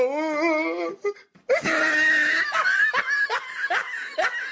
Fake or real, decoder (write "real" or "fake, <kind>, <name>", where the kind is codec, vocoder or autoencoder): real